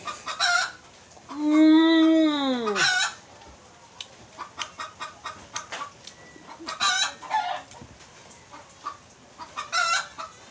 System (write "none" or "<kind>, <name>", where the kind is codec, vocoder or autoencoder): none